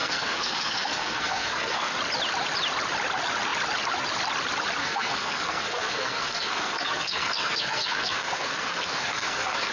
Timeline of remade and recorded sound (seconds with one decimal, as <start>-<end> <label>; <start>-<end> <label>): 0.0-1.9 remade; 1.9-4.8 recorded; 4.8-9.7 remade